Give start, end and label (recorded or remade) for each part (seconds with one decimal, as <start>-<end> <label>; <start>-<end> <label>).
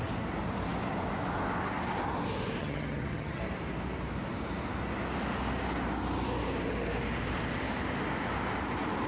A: 0.0-2.6 recorded; 2.6-3.4 remade; 3.4-9.1 recorded